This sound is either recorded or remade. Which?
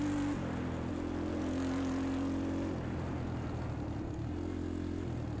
recorded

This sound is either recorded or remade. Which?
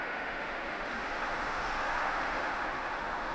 remade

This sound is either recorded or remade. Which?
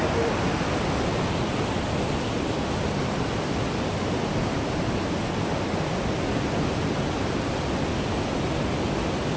recorded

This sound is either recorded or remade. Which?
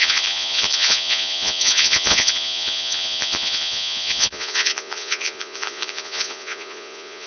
remade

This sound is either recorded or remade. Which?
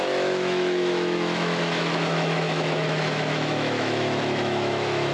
remade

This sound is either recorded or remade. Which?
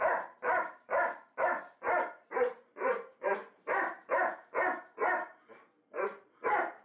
remade